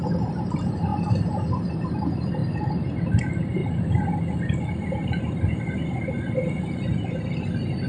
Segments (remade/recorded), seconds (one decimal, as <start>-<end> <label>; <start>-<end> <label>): 0.0-2.4 remade; 2.4-3.2 recorded; 3.2-3.6 remade; 3.6-6.6 recorded; 6.6-7.9 remade